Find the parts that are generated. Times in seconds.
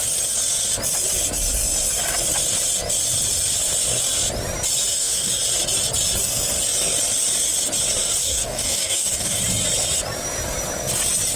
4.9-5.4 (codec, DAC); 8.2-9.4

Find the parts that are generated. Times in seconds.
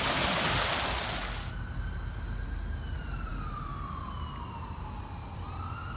none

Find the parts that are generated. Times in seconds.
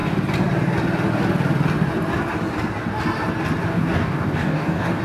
3.7-5.0 (codec, DAC)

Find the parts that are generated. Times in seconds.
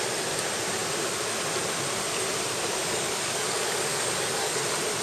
2.8-4.6 (codec, DAC)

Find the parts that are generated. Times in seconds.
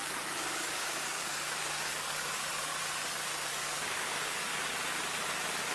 0.0-2.7 (codec, DAC); 3.5-4.5